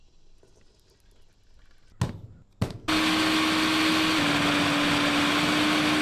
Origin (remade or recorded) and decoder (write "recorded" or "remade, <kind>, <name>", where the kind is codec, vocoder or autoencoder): recorded